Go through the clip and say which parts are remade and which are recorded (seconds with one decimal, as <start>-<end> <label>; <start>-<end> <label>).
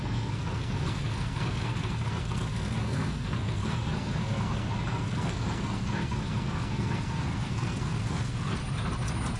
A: 0.0-8.6 remade; 8.6-9.4 recorded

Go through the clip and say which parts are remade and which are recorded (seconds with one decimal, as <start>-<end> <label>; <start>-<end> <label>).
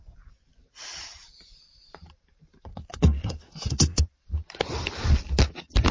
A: 0.0-2.7 recorded; 2.7-4.0 remade; 4.0-5.9 recorded